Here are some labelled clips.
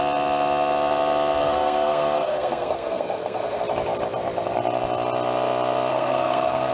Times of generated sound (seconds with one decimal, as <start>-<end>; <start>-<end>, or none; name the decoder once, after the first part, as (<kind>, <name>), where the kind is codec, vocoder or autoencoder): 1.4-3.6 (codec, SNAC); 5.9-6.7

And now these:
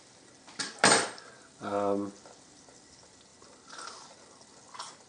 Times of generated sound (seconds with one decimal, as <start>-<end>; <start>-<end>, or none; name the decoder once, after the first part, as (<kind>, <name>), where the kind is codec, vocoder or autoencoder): none

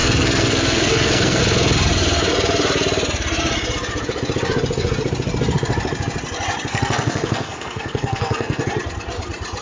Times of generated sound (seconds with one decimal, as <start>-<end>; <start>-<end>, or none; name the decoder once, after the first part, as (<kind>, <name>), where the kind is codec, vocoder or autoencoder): 0.0-1.4 (codec, SNAC); 6.7-8.6

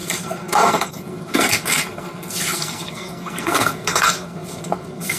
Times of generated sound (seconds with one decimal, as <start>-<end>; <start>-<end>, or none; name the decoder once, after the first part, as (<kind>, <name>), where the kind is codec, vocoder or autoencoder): 0.0-5.2 (codec, SNAC)

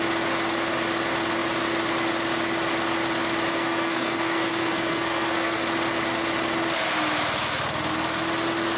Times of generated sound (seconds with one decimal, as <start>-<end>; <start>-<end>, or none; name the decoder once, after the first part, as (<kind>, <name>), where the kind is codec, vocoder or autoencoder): 3.5-5.6 (codec, SNAC)